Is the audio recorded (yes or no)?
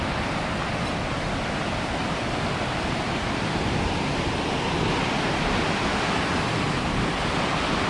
yes